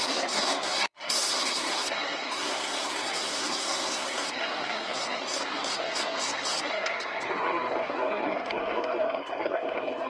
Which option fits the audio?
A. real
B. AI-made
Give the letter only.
B